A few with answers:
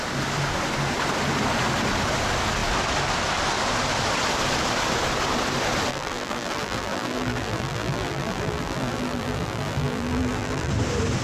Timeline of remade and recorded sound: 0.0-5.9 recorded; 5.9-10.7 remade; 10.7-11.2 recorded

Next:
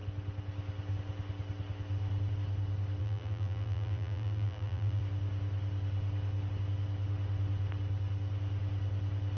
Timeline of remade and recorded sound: 0.0-3.0 recorded; 3.0-5.0 remade; 5.0-9.4 recorded

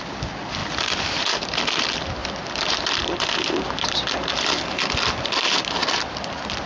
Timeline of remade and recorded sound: 0.0-2.2 recorded; 2.2-4.3 remade; 4.3-5.8 recorded; 5.8-6.7 remade